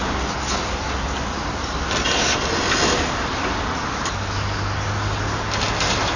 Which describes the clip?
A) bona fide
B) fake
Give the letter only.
A